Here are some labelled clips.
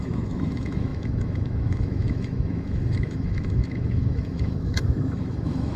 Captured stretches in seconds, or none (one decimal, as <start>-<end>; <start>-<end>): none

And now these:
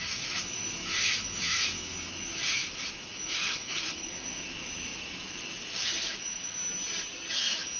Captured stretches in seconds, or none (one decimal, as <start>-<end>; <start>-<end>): 6.6-7.3

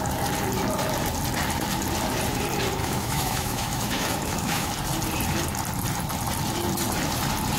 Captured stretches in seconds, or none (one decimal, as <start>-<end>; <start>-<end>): 0.0-2.8; 4.7-7.6